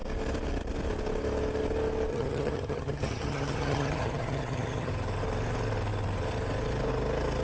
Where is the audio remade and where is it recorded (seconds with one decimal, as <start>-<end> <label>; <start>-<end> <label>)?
0.0-2.1 recorded; 2.1-4.9 remade; 4.9-7.4 recorded